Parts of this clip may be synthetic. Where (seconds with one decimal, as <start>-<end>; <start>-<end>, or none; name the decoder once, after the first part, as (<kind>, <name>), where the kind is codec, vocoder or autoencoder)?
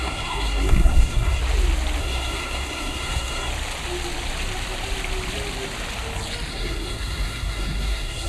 0.0-1.4 (codec, SNAC); 2.0-3.5; 6.5-8.3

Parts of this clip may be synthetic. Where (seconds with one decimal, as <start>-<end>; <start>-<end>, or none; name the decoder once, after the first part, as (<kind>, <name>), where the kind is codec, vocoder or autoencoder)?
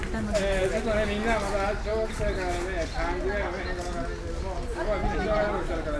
none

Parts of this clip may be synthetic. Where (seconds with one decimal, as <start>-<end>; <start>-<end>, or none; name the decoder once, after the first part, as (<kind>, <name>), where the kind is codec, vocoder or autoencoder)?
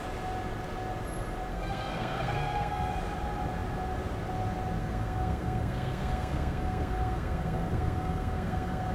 1.5-2.9 (codec, SNAC); 4.8-8.9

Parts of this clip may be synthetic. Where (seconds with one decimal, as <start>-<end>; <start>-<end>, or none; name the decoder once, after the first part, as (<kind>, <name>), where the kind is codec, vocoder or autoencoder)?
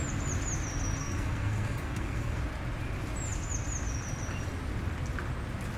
1.0-2.4 (codec, SNAC)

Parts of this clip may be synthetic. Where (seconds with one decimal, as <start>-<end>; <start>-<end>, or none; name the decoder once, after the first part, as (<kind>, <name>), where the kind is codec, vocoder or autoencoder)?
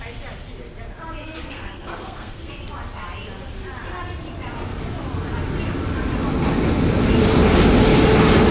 1.2-2.5 (codec, SNAC)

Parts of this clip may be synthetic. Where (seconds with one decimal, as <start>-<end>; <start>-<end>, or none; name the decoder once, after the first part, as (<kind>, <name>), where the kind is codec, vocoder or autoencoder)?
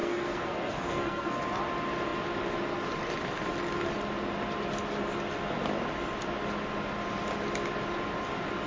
0.0-1.4 (codec, SNAC)